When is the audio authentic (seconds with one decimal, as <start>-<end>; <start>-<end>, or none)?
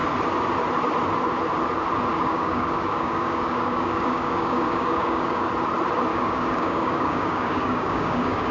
0.0-2.1; 5.5-6.1